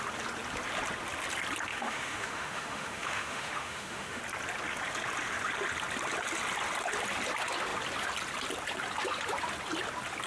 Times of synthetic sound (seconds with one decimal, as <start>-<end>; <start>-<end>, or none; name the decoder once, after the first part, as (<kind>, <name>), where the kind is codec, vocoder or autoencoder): 1.7-4.2 (autoencoder, DAC-VAE)